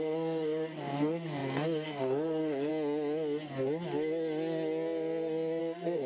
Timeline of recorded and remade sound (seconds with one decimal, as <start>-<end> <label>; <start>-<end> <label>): 0.0-2.7 remade; 2.7-5.6 recorded; 5.6-6.1 remade